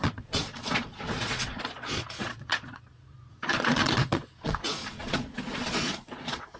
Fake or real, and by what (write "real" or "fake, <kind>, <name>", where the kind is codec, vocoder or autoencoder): fake, vocoder, Vocos